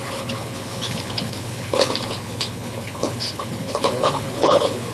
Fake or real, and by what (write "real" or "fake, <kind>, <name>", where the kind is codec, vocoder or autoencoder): fake, codec, HILCodec